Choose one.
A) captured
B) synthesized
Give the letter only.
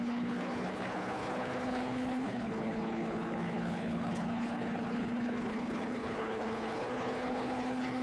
B